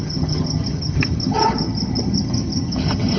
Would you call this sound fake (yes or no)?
yes